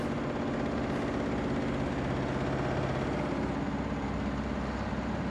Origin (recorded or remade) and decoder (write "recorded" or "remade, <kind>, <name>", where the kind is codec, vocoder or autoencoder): recorded